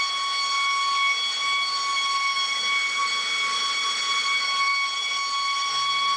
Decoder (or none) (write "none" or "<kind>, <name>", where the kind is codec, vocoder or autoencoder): none